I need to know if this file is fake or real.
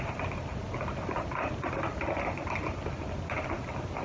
real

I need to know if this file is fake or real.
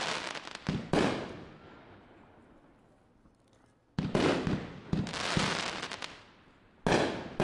real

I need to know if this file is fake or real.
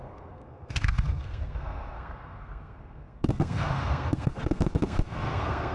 fake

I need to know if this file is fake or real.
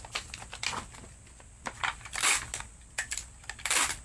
real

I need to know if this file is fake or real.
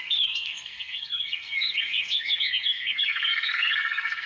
fake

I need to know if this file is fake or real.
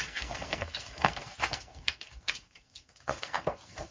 fake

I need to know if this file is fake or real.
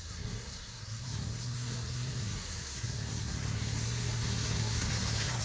fake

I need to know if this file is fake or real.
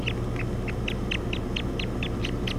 real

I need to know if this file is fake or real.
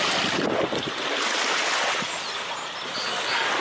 real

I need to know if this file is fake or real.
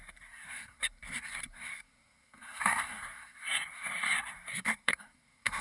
fake